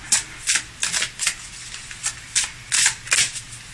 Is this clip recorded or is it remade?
recorded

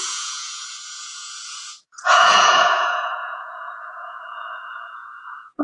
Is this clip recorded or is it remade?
remade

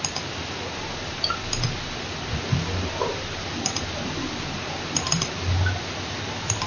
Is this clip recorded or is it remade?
recorded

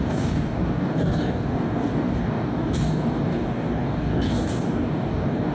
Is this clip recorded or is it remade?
remade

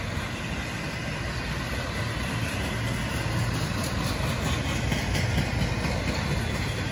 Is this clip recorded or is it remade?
recorded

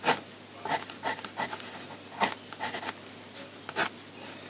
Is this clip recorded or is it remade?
recorded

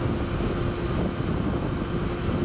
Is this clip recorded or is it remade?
recorded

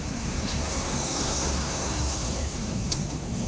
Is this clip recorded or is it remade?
remade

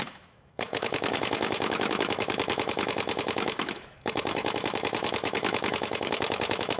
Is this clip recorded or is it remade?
remade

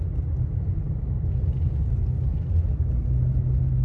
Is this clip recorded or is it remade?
recorded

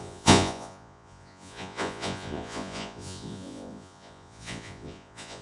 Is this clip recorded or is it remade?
remade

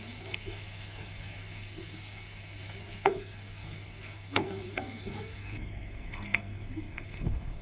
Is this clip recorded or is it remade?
remade